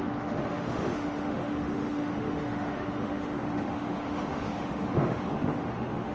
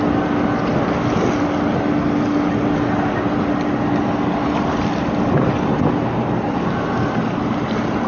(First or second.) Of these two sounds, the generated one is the first